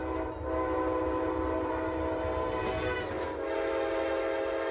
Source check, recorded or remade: recorded